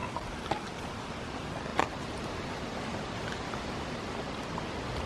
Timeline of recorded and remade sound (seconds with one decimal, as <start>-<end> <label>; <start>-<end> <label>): 0.0-5.1 recorded